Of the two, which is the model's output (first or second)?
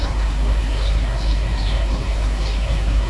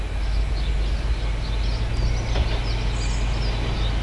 first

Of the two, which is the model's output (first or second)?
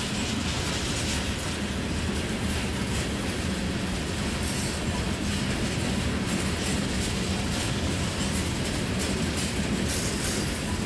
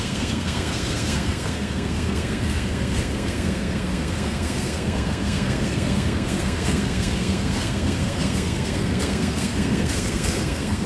second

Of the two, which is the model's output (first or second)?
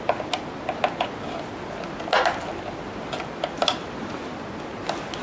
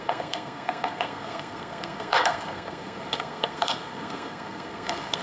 second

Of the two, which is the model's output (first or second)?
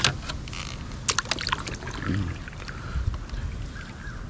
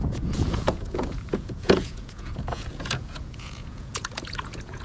second